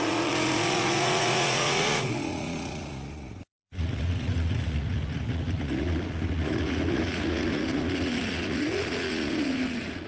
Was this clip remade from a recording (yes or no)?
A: yes